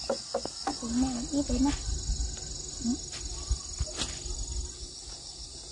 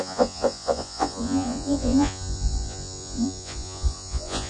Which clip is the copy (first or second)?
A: second